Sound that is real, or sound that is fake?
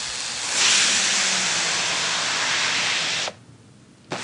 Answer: real